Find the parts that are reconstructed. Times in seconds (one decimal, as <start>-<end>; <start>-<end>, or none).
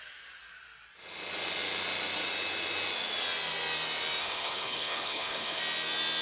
4.2-5.6